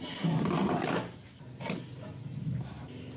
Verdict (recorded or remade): recorded